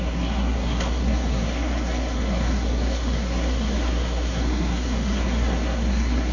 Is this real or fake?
fake